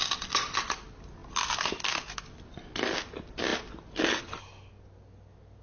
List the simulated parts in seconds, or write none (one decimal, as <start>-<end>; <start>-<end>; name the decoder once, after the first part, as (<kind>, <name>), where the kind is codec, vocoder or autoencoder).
none

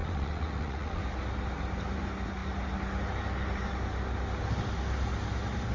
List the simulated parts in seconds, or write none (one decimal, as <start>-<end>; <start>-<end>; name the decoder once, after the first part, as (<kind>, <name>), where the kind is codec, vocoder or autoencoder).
0.0-1.0 (vocoder, WaveNeXt)

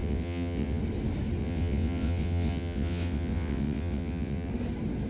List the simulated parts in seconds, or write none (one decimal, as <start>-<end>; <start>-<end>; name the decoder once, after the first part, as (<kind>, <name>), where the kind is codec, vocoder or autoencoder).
0.0-0.8 (vocoder, WaveNeXt); 1.4-4.5

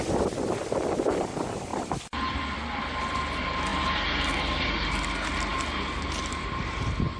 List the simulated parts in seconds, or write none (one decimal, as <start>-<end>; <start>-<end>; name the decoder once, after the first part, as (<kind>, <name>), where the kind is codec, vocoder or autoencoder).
none

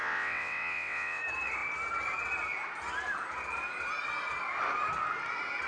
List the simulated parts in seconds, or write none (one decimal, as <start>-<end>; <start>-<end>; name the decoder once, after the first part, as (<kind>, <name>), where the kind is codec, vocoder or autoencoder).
0.0-1.2 (vocoder, WaveNeXt)

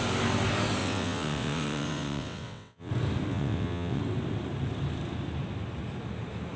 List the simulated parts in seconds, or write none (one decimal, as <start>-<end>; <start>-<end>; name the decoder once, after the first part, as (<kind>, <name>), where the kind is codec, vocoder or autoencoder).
0.8-2.9 (vocoder, WaveNeXt); 3.3-4.0